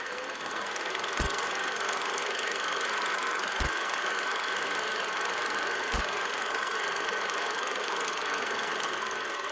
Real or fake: fake